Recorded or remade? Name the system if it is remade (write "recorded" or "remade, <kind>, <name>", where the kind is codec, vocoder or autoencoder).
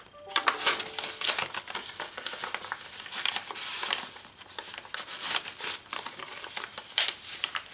recorded